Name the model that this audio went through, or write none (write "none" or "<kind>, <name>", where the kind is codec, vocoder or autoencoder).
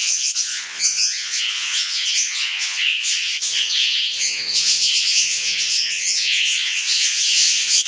vocoder, Vocos